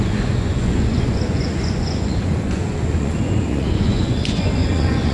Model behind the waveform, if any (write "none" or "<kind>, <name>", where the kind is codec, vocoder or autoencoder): vocoder, Vocos